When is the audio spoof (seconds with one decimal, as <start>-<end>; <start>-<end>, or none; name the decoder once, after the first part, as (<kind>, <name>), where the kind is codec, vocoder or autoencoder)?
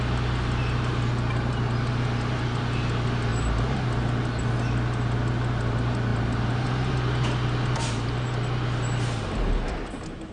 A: none